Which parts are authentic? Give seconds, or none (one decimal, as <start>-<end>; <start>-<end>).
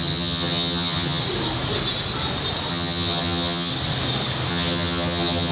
1.2-2.7; 3.7-4.5